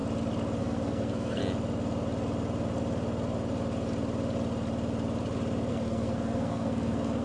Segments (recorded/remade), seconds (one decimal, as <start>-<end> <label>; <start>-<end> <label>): 0.0-0.6 recorded; 0.6-1.4 remade; 1.4-5.7 recorded; 5.7-7.2 remade